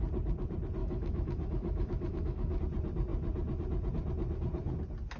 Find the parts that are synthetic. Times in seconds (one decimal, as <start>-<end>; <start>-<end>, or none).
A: 0.8-2.6

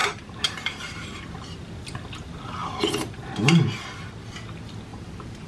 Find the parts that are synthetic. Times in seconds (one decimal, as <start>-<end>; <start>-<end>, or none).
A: 0.0-1.2; 2.6-3.6; 4.9-5.5

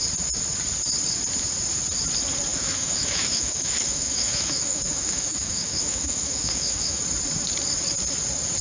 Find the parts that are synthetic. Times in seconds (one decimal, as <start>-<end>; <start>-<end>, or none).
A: 2.5-7.0

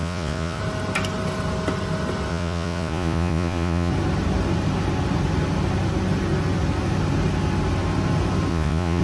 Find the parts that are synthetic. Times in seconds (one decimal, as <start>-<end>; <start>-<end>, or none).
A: 0.0-0.6; 2.3-3.9; 8.5-9.0